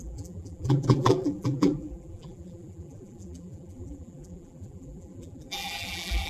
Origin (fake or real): fake